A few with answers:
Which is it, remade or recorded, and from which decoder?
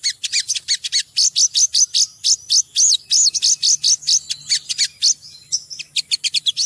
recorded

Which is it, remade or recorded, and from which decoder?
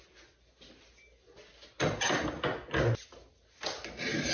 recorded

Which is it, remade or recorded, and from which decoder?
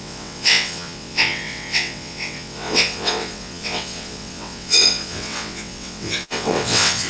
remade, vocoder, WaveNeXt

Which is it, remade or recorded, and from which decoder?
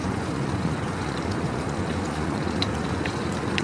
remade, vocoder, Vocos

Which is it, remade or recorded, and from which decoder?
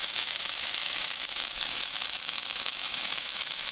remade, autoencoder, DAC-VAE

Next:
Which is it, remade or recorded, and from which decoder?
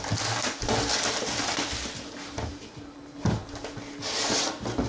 recorded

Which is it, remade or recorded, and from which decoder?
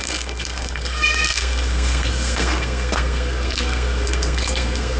remade, codec, SNAC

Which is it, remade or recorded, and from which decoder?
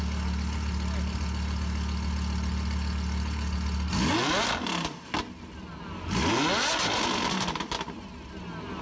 recorded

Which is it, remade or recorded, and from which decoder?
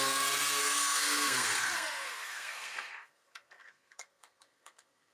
remade, codec, SNAC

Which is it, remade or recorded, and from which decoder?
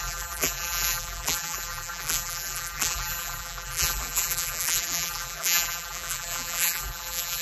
remade, vocoder, BigVGAN v2